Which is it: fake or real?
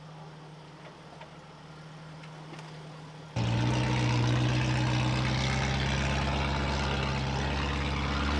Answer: real